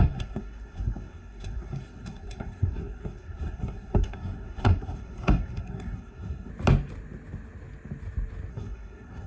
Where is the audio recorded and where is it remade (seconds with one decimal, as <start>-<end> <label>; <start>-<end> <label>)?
0.0-6.5 remade; 6.5-8.5 recorded; 8.5-9.3 remade

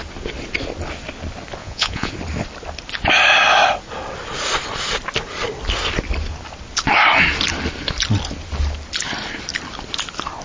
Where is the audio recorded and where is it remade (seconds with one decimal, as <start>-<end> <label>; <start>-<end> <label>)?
0.0-1.6 recorded; 1.6-2.1 remade; 2.1-10.4 recorded

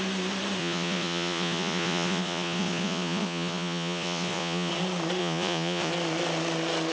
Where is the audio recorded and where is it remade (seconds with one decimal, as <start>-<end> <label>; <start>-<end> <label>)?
0.0-0.6 recorded; 0.6-4.7 remade; 4.7-5.2 recorded; 5.2-5.9 remade; 5.9-6.9 recorded